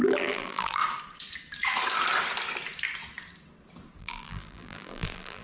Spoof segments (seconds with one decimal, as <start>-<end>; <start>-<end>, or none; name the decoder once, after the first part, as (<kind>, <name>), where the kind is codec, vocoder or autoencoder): 0.0-0.8 (vocoder, BigVGAN v2); 4.0-5.4